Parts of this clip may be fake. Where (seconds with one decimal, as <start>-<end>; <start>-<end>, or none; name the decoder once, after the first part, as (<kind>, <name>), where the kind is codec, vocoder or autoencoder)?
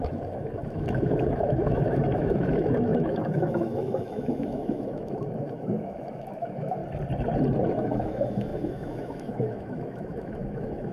0.0-6.8 (autoencoder, DAC-VAE); 7.7-10.9